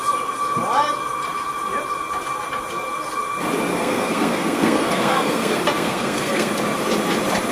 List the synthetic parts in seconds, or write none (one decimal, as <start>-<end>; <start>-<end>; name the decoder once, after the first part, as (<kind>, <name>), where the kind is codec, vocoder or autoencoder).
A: 3.7-6.5 (codec, SNAC)